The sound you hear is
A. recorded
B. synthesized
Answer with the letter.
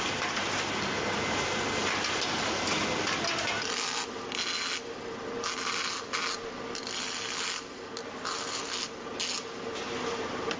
A